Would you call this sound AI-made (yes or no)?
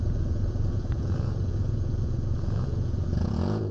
yes